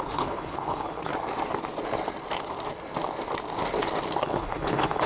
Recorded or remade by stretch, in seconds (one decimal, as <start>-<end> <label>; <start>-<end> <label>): 0.0-1.1 remade; 1.1-4.2 recorded; 4.2-5.1 remade